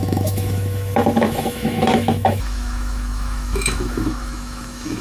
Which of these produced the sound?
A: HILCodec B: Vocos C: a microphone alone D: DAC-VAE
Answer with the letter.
D